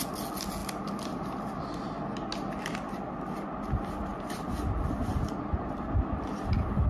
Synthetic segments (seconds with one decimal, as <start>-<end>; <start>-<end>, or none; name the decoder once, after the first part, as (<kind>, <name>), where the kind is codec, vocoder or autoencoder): none